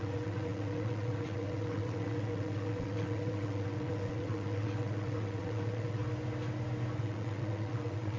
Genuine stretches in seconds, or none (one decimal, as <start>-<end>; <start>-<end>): 6.0-7.0